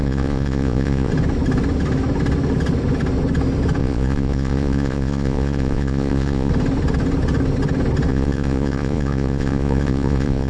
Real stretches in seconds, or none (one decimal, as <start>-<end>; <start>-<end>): 1.1-3.8; 6.5-8.1